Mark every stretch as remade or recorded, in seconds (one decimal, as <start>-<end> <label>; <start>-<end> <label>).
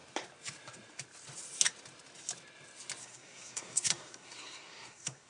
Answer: 0.0-3.0 recorded; 3.0-5.3 remade